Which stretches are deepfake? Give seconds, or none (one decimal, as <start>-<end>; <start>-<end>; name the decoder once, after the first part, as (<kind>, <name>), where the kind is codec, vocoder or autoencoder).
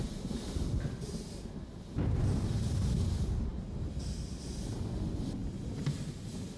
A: none